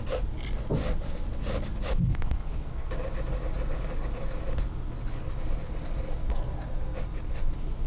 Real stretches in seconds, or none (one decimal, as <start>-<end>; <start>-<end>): 0.0-1.9; 2.9-7.9